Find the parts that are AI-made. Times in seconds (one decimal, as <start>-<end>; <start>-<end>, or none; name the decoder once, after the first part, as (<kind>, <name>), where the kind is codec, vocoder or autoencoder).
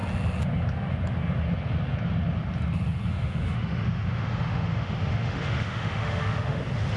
3.1-6.6 (autoencoder, DAC-VAE)